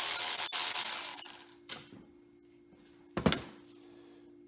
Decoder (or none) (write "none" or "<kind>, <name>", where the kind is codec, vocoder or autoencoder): none